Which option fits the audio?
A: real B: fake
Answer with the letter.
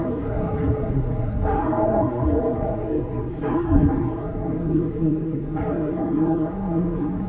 B